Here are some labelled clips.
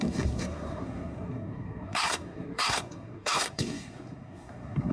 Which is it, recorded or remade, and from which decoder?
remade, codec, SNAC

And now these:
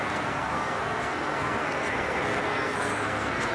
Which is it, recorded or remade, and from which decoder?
remade, codec, SNAC